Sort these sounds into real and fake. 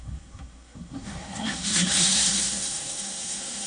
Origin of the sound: fake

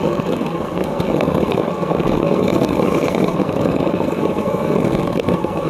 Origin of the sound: fake